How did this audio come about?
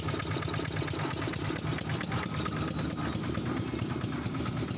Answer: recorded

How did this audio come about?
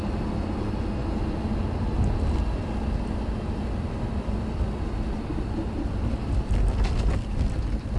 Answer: recorded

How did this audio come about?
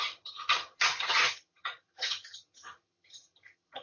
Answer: remade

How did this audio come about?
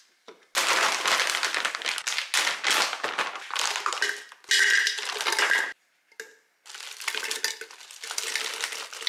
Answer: recorded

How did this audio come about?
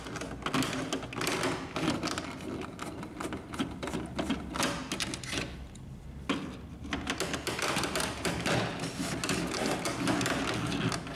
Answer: recorded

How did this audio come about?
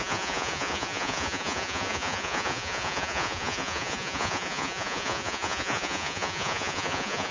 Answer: remade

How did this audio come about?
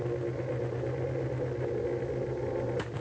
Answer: recorded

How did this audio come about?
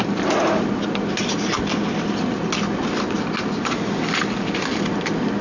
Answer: recorded